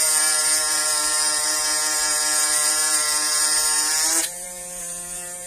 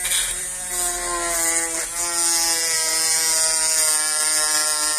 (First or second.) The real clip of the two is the second